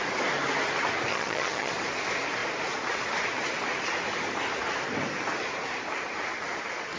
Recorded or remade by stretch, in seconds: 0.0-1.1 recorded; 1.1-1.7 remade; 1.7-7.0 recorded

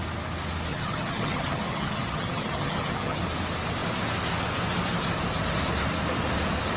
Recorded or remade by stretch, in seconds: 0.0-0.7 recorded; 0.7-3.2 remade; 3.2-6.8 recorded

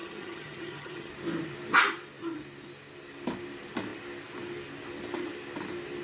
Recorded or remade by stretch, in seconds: 0.0-1.1 remade; 1.1-6.0 recorded

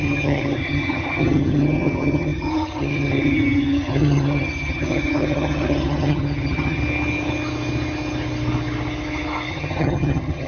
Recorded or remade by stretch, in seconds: 0.0-6.8 remade; 6.8-9.5 recorded; 9.5-10.5 remade